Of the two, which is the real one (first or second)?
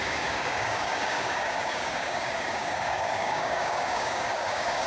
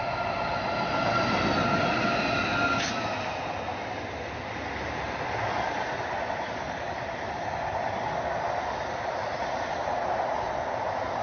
second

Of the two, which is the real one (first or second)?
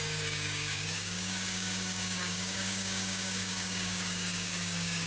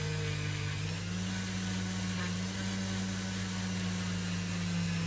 second